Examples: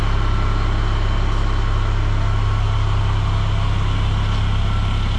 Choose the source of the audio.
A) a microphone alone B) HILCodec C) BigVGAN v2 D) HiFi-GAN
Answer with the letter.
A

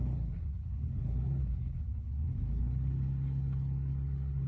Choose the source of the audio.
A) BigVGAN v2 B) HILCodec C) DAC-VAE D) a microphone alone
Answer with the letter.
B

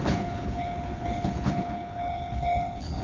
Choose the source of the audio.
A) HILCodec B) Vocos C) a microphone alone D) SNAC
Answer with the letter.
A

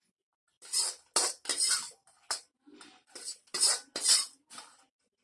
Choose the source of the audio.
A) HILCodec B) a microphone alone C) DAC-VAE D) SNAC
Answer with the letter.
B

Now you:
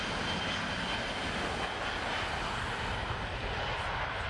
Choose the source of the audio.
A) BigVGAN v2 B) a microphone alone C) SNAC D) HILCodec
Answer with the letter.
B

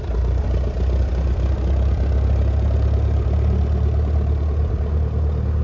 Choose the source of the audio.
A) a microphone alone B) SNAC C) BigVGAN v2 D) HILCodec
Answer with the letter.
A